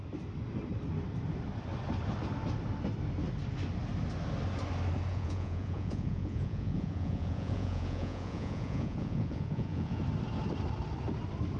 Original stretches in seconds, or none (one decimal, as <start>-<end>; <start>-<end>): 0.0-5.1; 10.0-11.6